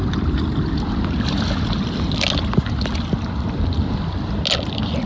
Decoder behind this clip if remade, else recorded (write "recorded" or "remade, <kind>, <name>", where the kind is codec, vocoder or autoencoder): recorded